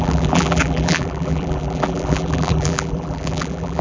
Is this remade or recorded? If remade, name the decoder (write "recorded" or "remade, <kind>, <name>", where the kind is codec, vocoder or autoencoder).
remade, vocoder, BigVGAN v2